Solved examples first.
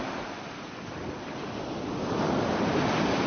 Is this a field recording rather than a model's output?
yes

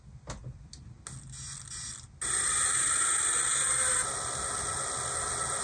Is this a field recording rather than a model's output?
yes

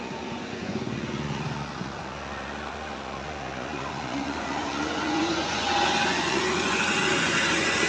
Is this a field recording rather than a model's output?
no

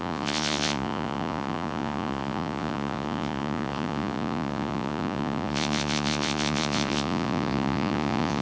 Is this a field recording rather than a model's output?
no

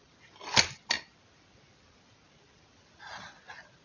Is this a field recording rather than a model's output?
yes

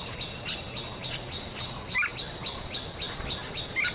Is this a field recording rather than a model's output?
yes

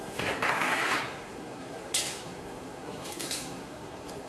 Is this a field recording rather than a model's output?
no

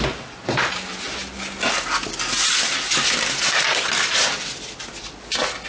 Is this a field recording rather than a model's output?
yes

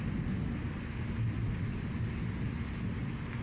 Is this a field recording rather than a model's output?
yes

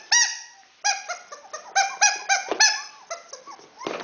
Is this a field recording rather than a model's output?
yes